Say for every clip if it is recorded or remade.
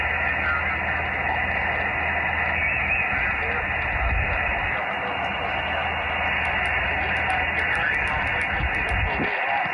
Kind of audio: recorded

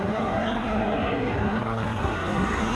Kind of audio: remade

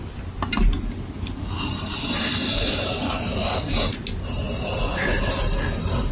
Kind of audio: recorded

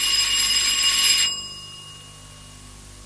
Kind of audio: recorded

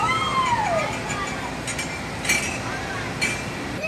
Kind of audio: recorded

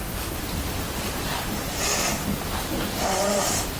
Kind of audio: recorded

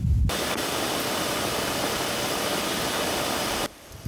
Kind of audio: recorded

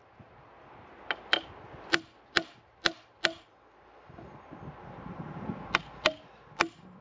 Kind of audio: recorded